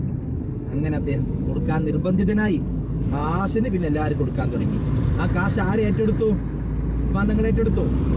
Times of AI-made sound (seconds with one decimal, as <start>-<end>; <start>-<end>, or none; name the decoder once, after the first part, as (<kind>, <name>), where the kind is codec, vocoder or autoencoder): 0.0-4.7 (codec, DAC); 7.5-8.2